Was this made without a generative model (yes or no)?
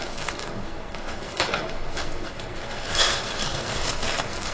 no